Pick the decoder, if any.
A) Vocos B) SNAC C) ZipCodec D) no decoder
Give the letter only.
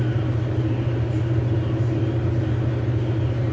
D